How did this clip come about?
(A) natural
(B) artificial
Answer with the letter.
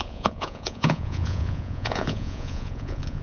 B